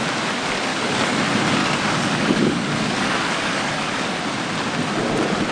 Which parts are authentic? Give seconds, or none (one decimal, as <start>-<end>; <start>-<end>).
0.0-0.7; 1.2-1.6; 4.2-5.5

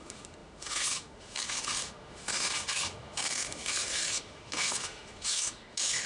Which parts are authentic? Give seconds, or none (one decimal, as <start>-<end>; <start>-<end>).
none